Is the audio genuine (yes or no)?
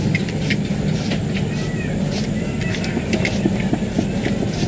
yes